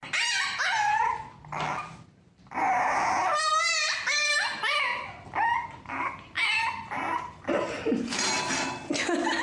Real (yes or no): yes